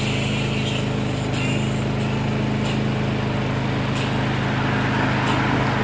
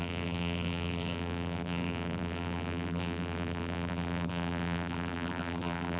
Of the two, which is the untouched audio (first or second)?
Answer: first